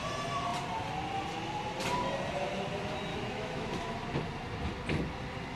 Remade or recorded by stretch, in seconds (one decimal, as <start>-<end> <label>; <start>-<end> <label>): 0.0-3.1 recorded; 3.1-3.7 remade; 3.7-5.6 recorded